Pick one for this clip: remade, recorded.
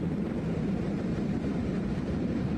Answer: remade